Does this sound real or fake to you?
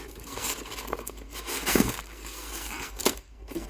fake